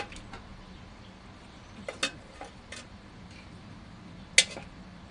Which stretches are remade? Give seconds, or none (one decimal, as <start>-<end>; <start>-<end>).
none